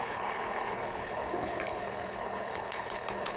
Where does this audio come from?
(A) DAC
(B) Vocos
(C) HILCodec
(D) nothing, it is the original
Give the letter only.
C